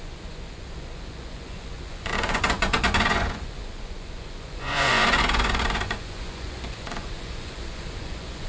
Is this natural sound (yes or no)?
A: no